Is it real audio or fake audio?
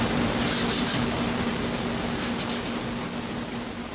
real